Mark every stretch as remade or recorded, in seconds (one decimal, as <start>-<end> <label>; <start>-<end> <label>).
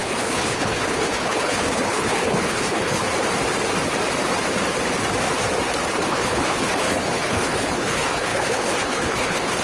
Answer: 0.0-3.0 remade; 3.0-6.0 recorded; 6.0-9.6 remade